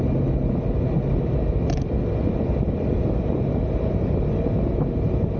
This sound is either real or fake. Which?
real